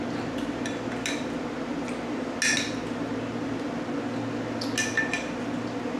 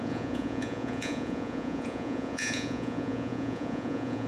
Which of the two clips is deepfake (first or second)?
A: second